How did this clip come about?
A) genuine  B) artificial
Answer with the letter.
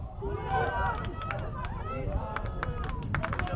A